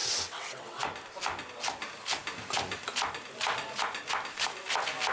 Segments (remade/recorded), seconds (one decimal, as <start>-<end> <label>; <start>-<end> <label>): 0.0-0.8 remade; 0.8-5.1 recorded